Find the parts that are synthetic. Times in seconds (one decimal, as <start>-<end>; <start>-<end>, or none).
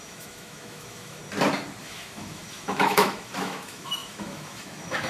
0.0-1.2; 1.8-5.1